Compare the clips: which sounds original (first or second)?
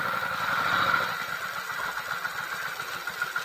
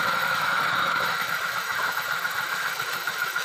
first